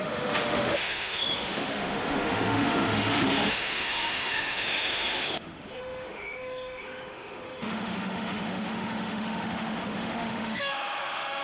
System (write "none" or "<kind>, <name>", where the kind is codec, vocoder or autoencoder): autoencoder, DAC-VAE